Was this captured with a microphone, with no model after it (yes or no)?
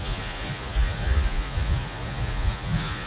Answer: no